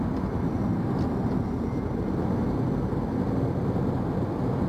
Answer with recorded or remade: recorded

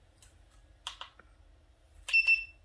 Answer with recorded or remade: recorded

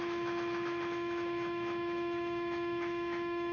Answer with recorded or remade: remade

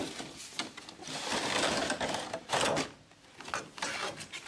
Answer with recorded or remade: recorded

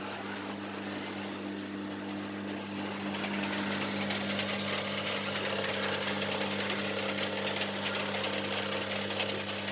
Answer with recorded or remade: recorded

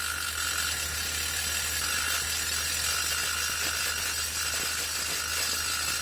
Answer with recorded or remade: recorded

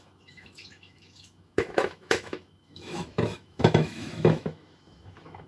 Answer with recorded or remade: remade